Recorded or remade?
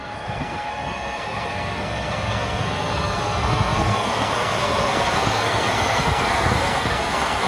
remade